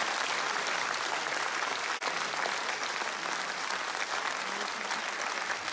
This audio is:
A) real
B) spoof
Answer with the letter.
A